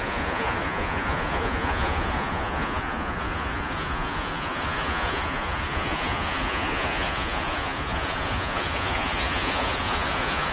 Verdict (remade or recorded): remade